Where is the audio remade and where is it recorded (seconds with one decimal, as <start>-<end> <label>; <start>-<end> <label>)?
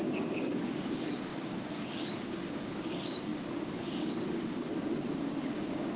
0.0-4.7 remade; 4.7-5.4 recorded; 5.4-6.0 remade